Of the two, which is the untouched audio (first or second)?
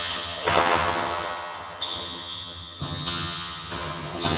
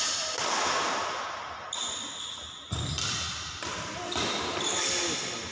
second